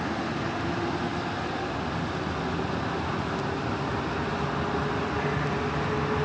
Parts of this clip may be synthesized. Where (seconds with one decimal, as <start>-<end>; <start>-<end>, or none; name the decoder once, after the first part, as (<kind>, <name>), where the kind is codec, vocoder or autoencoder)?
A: none